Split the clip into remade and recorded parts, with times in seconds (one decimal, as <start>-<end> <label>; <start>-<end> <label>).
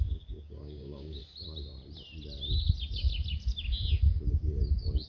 0.0-1.2 remade; 1.2-4.3 recorded; 4.3-5.1 remade